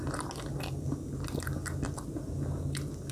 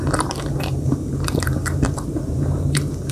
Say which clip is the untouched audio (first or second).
first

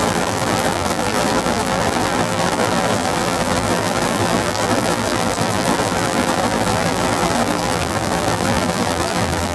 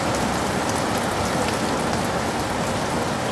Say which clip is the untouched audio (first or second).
second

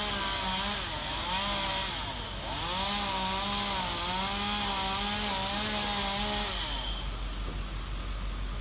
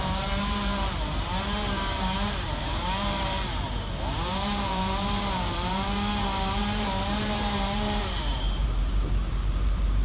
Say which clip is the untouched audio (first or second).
first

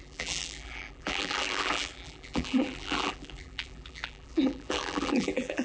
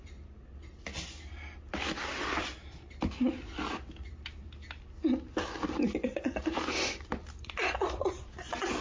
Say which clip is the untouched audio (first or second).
second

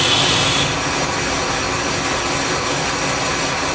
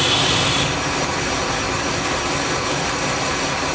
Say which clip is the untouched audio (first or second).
first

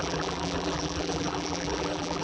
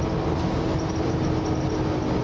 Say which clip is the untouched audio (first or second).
second